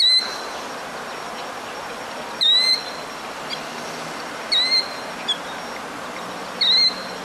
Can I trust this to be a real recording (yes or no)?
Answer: yes